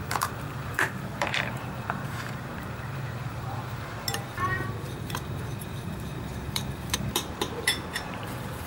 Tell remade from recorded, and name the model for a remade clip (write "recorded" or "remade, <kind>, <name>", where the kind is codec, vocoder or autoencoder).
remade, vocoder, BigVGAN v2